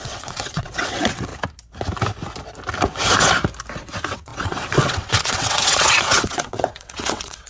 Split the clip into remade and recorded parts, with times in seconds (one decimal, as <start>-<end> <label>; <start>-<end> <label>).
0.0-1.3 remade; 1.3-3.8 recorded; 3.8-7.5 remade